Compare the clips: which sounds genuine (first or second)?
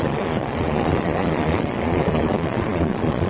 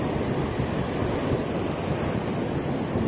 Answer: second